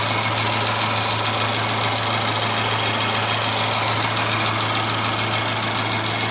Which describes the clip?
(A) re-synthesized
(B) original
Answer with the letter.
B